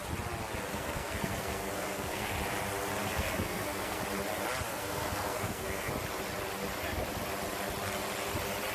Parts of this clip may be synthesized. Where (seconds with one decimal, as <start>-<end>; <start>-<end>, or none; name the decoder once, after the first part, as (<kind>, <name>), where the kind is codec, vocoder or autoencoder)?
0.7-2.3 (codec, SNAC); 3.0-4.0; 4.7-5.9